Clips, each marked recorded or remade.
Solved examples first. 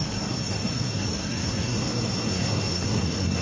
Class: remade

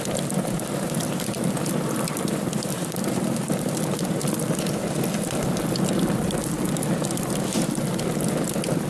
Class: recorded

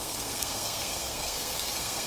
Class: remade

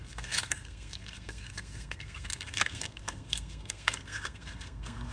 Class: remade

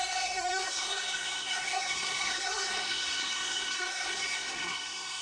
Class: remade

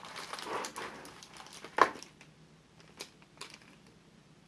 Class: recorded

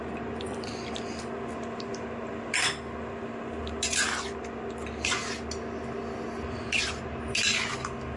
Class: recorded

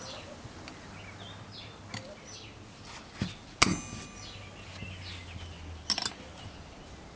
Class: recorded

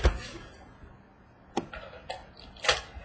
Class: recorded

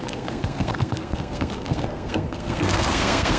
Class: remade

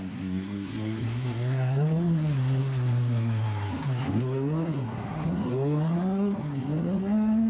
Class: remade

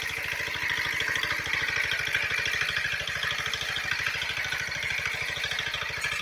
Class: recorded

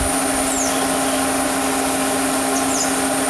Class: recorded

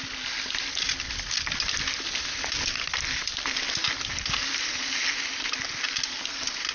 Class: recorded